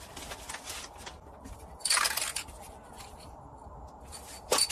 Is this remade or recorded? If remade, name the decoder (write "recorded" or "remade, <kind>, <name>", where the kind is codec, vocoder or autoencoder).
recorded